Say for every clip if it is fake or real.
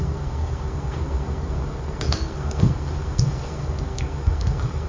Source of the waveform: fake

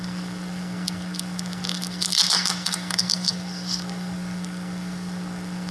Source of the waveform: fake